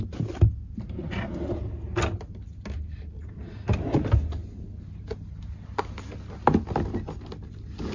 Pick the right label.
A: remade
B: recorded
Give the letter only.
B